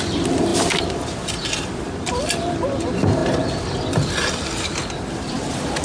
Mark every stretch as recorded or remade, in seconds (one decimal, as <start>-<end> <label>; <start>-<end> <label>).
0.0-5.8 recorded